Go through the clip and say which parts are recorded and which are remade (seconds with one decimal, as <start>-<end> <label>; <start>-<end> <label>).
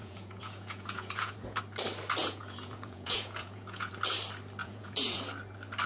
0.0-1.6 remade; 1.6-2.2 recorded; 2.2-3.9 remade; 3.9-4.6 recorded; 4.6-5.2 remade; 5.2-5.9 recorded